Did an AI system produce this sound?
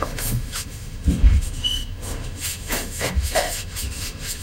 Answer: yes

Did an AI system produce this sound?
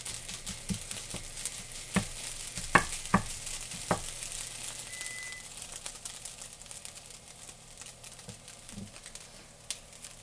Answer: no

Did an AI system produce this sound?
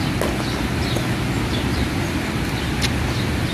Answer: no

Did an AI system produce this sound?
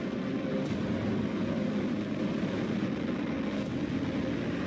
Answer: no